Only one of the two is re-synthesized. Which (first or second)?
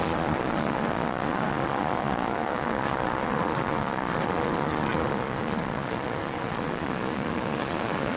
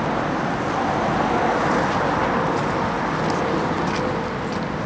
first